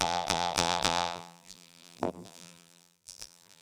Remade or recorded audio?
remade